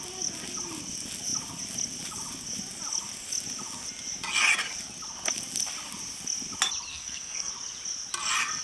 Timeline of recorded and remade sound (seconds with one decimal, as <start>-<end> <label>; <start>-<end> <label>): 0.0-6.9 recorded; 6.9-7.5 remade; 7.5-8.6 recorded